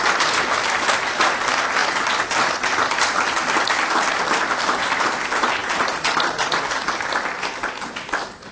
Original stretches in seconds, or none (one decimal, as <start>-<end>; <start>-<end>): 0.0-8.5